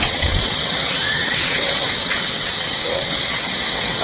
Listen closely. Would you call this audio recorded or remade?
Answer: remade